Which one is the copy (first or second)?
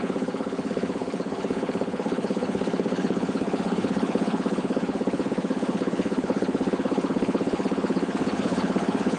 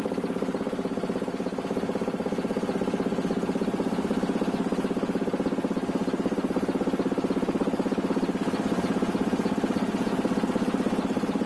first